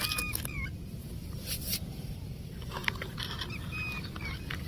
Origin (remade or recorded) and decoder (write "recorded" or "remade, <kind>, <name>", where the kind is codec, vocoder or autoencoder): recorded